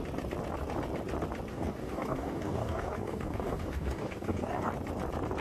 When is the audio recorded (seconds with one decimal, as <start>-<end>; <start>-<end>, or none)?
0.0-1.5; 4.7-5.4